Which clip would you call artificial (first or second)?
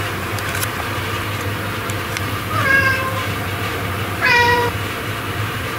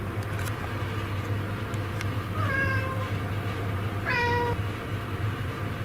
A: first